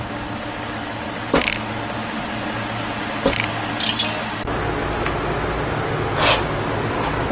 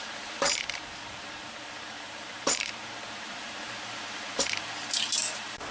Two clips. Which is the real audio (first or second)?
first